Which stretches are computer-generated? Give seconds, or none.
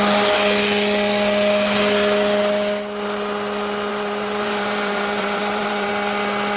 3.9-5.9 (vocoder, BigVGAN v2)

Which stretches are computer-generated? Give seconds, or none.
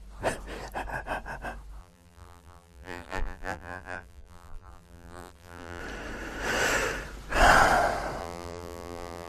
1.8-5.8 (vocoder, BigVGAN v2); 8.2-9.3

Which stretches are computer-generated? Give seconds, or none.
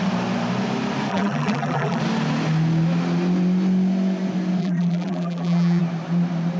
1.1-2.0 (vocoder, BigVGAN v2); 4.6-5.8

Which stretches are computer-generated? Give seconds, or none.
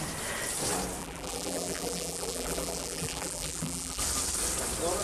1.0-4.0 (vocoder, BigVGAN v2)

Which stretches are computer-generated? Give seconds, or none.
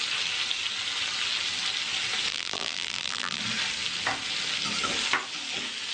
2.3-3.4 (vocoder, BigVGAN v2)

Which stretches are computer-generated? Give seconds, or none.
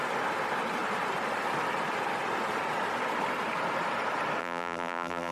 4.4-5.3 (vocoder, BigVGAN v2)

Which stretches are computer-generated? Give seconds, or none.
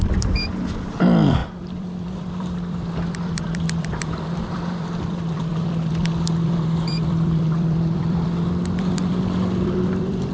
0.0-10.3 (vocoder, BigVGAN v2)